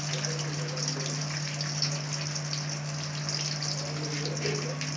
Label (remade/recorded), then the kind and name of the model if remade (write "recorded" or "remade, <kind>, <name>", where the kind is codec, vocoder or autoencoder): recorded